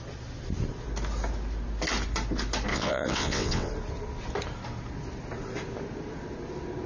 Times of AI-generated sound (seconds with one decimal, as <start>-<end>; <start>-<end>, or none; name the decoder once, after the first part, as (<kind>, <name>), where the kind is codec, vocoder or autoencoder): 2.7-3.7 (vocoder, WaveNeXt)